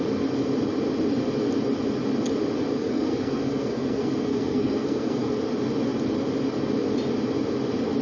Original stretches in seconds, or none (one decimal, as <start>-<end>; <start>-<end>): 0.0-2.7; 5.3-8.0